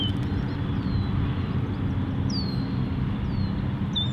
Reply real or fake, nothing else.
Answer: real